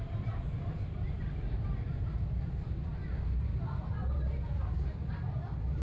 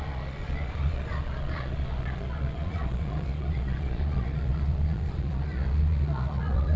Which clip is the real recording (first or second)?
first